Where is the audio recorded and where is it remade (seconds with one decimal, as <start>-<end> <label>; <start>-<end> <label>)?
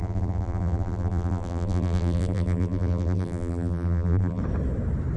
0.0-4.4 remade; 4.4-5.2 recorded